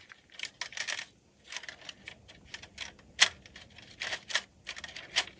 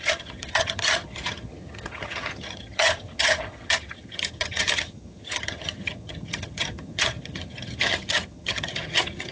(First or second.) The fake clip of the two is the second